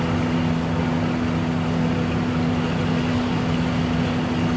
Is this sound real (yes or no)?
yes